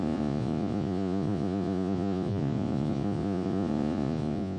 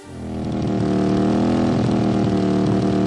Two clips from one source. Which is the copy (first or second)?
first